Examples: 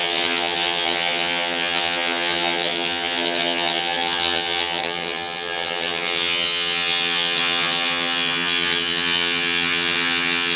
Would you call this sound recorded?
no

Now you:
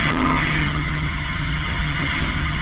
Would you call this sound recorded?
no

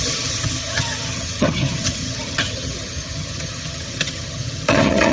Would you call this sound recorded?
no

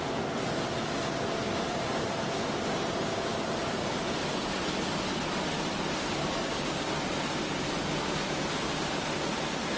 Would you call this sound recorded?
yes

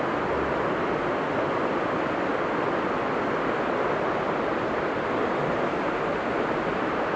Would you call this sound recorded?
yes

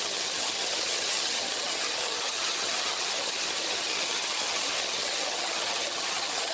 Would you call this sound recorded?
no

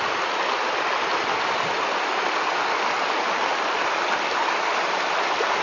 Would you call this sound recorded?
yes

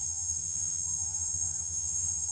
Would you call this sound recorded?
no